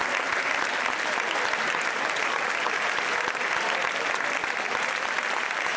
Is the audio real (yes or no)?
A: yes